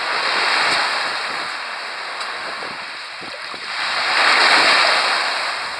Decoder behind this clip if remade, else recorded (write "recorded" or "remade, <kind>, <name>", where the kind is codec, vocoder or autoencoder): recorded